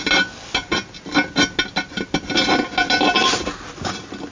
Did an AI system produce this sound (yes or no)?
no